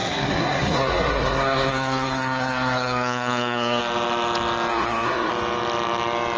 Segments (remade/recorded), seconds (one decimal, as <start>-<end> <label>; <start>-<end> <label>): 0.0-3.8 remade; 3.8-4.7 recorded; 4.7-5.3 remade; 5.3-6.4 recorded